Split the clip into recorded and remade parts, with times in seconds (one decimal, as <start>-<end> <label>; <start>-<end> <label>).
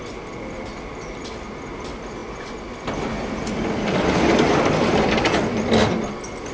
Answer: 0.0-6.5 recorded